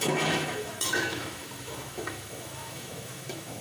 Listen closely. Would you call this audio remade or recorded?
remade